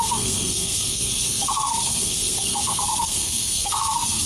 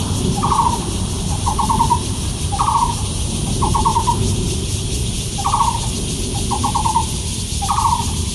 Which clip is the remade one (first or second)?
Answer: first